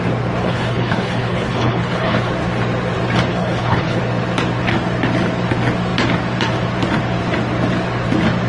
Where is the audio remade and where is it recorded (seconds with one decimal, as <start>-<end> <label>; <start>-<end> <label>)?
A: 0.0-0.4 recorded; 0.4-2.3 remade; 2.3-3.3 recorded; 3.3-4.0 remade; 4.0-8.5 recorded